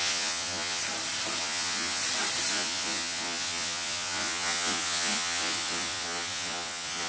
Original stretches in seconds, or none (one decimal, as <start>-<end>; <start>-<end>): 0.8-1.4; 2.0-2.5